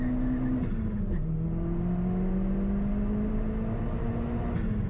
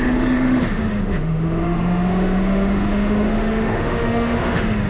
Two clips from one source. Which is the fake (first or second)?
second